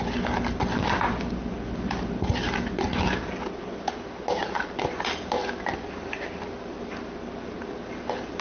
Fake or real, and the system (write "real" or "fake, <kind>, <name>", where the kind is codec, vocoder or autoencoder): real